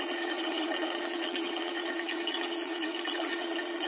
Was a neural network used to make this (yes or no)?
yes